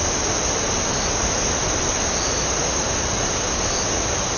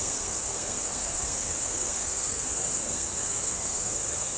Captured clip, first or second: first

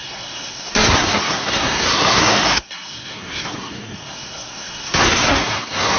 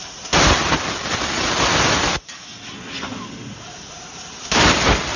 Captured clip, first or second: second